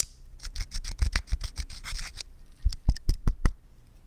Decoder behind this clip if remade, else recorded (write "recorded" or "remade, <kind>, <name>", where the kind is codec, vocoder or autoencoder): recorded